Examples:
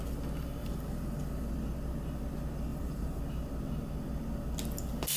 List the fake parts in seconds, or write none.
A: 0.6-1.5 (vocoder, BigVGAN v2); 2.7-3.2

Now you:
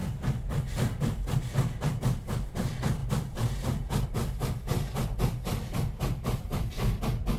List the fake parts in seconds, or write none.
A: none

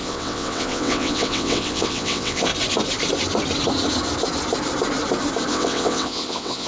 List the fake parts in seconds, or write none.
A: 0.0-2.5 (vocoder, WaveNeXt); 5.5-6.7